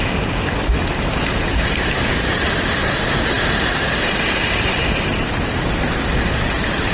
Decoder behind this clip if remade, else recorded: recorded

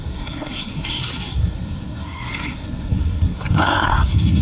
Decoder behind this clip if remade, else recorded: remade, codec, SNAC